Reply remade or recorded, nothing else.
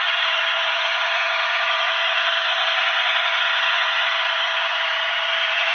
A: remade